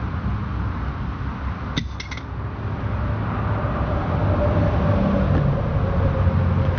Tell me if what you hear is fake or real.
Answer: real